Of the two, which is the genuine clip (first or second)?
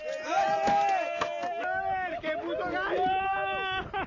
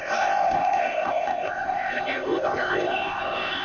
first